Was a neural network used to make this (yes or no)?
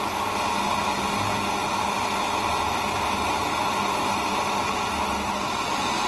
no